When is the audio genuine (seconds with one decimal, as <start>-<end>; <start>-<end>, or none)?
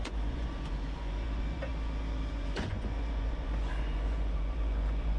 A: 1.7-2.3